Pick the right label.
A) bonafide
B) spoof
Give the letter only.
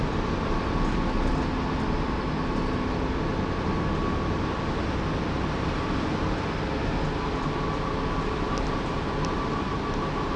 A